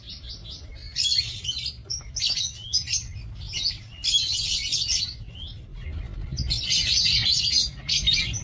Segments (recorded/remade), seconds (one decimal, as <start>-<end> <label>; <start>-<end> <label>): 0.0-6.8 recorded; 6.8-8.0 remade; 8.0-8.4 recorded